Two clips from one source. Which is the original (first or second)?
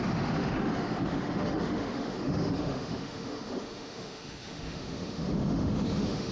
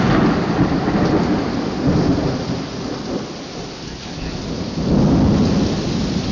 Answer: second